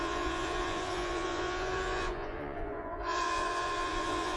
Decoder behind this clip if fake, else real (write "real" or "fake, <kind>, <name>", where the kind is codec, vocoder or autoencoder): fake, vocoder, Vocos